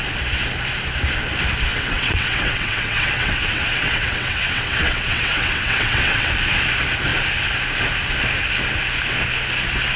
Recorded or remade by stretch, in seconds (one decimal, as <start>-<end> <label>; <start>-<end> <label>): 0.0-1.7 recorded; 1.7-6.3 remade; 6.3-10.0 recorded